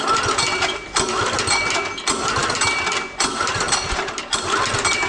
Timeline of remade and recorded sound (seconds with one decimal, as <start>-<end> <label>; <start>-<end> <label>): 0.0-5.1 recorded